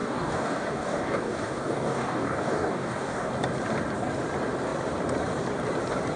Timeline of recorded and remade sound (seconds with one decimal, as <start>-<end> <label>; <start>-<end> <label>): 0.0-3.3 remade; 3.3-6.2 recorded